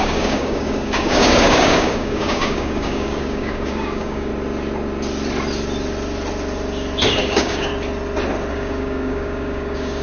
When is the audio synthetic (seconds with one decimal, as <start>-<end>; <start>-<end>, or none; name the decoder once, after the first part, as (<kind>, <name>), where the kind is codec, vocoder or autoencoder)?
0.0-4.3 (codec, DAC); 7.2-7.7; 8.5-10.0